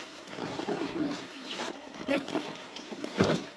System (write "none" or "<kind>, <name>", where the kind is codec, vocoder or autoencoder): codec, SNAC